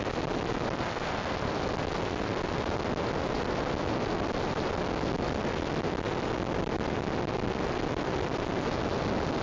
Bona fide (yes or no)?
yes